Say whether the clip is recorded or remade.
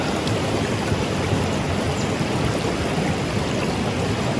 recorded